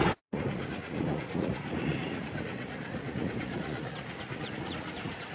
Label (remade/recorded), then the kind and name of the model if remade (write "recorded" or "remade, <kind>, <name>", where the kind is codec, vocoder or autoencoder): remade, vocoder, Vocos